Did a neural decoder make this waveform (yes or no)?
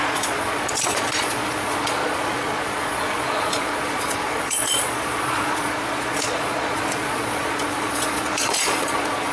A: yes